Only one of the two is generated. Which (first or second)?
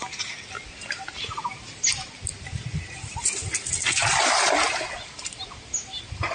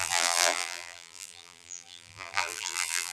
second